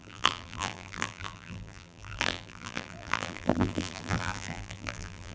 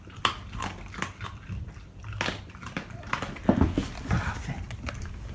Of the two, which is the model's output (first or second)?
first